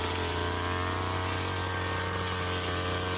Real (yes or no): yes